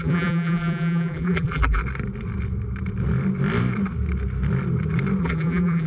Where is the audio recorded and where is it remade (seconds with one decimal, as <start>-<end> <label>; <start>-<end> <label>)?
0.0-1.8 remade; 1.8-5.2 recorded; 5.2-5.9 remade